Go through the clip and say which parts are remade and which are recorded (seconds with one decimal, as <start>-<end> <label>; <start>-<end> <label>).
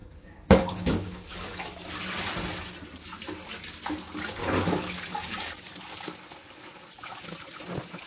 0.0-1.9 remade; 1.9-4.4 recorded; 4.4-5.5 remade; 5.5-8.1 recorded